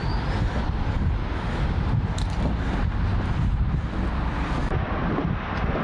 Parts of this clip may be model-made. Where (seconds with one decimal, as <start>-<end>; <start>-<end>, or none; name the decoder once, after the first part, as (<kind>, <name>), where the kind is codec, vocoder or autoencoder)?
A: 0.0-0.6 (vocoder, BigVGAN v2)